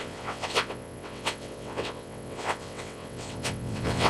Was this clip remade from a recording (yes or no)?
yes